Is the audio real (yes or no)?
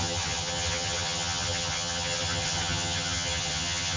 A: no